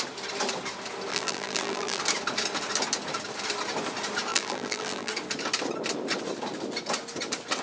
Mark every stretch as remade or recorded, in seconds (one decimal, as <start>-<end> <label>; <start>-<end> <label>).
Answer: 0.0-1.1 recorded; 1.1-2.0 remade; 2.0-4.3 recorded; 4.3-5.1 remade; 5.1-7.6 recorded